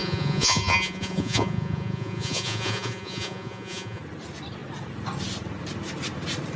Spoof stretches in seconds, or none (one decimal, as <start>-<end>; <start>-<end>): 0.0-4.0